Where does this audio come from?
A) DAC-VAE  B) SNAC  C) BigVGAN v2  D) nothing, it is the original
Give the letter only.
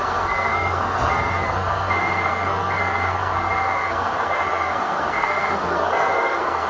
B